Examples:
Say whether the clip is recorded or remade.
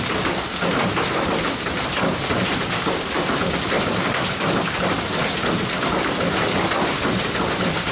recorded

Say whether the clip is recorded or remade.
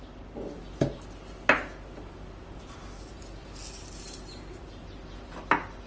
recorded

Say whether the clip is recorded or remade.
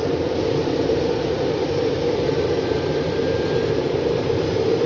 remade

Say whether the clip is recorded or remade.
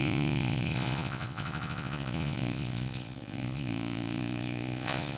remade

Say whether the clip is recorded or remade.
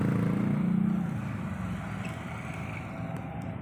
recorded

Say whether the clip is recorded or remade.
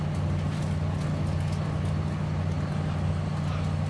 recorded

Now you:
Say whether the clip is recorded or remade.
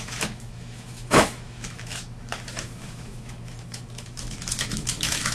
remade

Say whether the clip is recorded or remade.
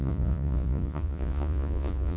remade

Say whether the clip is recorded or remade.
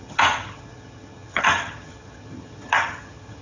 remade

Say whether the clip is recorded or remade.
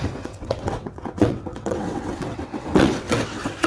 remade